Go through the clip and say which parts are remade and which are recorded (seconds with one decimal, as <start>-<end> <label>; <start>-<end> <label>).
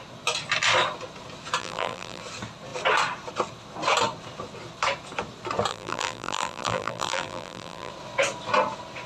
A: 0.0-1.6 recorded; 1.6-2.2 remade; 2.2-5.7 recorded; 5.7-7.9 remade; 7.9-9.1 recorded